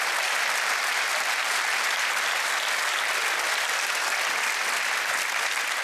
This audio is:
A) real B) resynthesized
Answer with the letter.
B